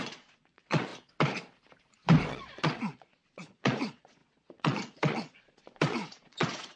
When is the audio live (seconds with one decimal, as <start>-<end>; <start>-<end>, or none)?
0.9-2.3